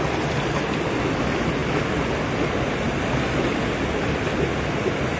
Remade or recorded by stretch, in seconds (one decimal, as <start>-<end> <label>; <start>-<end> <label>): 0.0-5.2 recorded

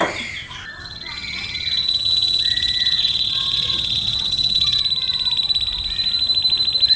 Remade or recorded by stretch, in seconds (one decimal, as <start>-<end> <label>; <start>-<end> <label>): 0.0-0.8 recorded; 0.8-4.8 remade; 4.8-7.0 recorded